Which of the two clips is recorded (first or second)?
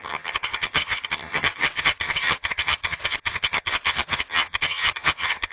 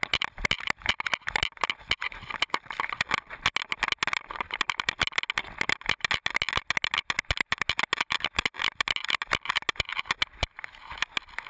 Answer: second